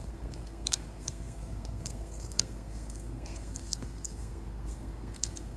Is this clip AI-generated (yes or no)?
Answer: yes